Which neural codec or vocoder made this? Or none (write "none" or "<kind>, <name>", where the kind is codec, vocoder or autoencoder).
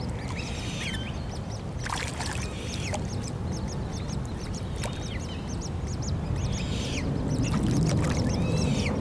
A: none